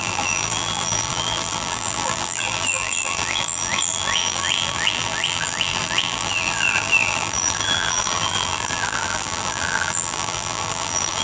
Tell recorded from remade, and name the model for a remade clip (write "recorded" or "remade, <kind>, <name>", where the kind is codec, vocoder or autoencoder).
remade, vocoder, BigVGAN v2